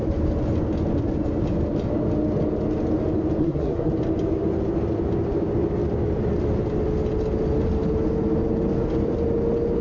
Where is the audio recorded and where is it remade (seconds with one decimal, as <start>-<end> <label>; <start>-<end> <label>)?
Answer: 0.0-3.4 recorded; 3.4-3.9 remade; 3.9-9.8 recorded